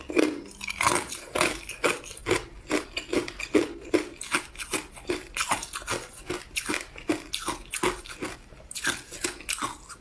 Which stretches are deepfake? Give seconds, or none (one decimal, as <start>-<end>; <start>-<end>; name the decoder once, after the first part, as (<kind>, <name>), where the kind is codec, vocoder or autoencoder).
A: none